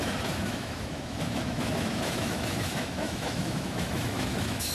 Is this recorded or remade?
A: remade